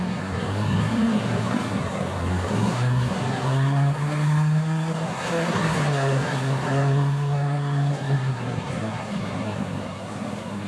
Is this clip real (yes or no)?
no